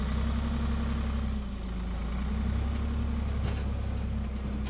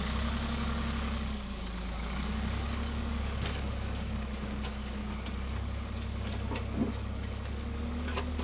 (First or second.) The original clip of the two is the first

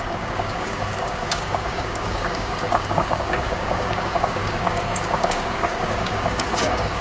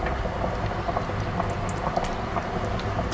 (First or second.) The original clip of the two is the second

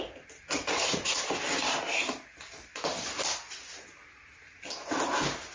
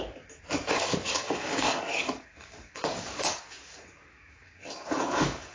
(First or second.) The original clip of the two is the first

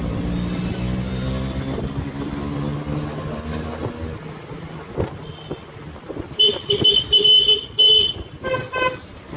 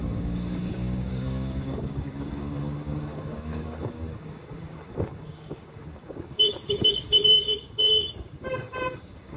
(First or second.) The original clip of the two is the first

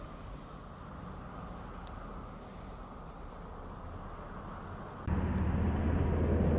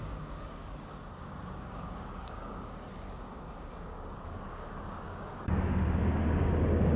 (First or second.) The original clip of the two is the first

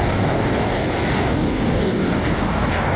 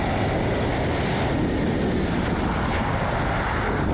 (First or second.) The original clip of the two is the second